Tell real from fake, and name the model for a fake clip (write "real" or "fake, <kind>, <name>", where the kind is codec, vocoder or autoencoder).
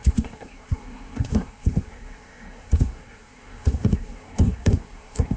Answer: fake, codec, SNAC